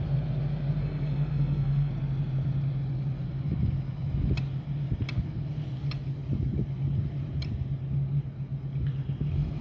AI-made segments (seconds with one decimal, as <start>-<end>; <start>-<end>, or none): 0.8-1.9